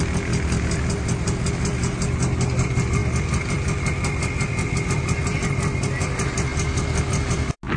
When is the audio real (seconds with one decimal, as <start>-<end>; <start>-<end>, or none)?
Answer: 0.0-7.8

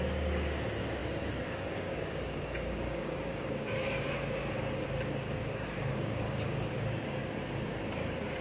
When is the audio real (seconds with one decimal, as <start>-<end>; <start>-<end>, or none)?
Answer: 7.2-7.8